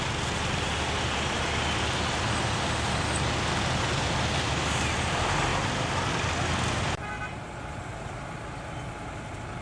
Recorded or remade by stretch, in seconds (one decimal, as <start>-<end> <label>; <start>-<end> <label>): 0.0-9.6 recorded